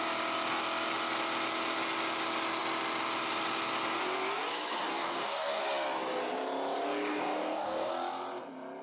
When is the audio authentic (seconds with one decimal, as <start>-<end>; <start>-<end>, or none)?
0.0-4.9; 5.6-7.1; 7.9-8.8